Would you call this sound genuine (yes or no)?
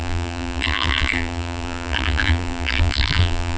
no